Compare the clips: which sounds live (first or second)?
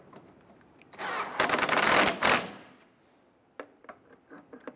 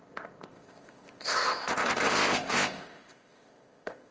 first